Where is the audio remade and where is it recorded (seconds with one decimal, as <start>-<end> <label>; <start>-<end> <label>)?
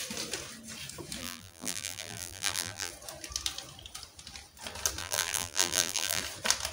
0.0-1.2 recorded; 1.2-2.9 remade; 2.9-5.0 recorded; 5.0-6.2 remade; 6.2-6.7 recorded